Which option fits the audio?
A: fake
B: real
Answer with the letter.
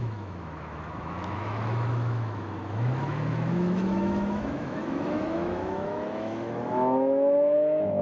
A